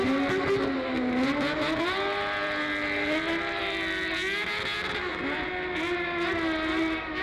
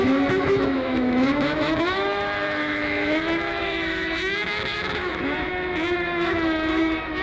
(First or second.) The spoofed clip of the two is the second